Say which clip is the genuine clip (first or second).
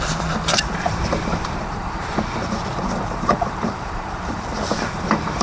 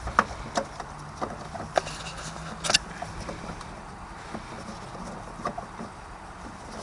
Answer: second